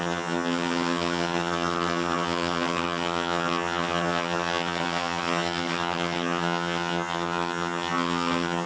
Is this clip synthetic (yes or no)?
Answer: yes